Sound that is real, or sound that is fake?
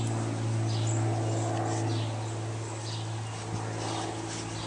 real